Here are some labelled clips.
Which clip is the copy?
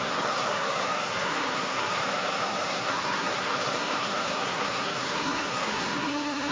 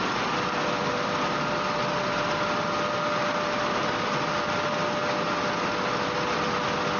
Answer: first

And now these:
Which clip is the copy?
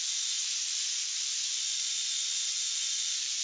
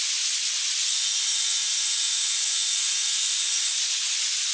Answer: first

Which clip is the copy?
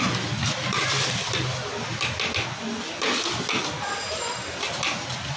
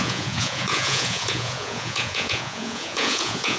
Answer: second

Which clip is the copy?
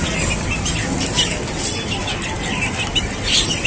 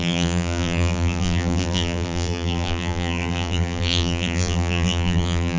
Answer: second